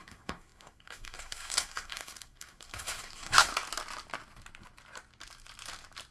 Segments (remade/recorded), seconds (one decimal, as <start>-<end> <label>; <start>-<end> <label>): 0.0-3.5 remade; 3.5-6.1 recorded